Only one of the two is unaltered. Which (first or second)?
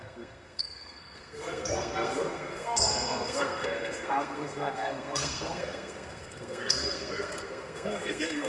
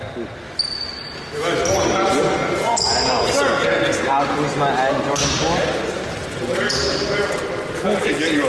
second